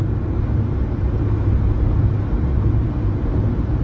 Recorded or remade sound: recorded